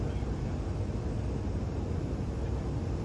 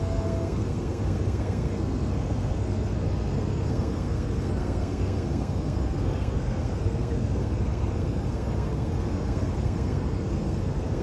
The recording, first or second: first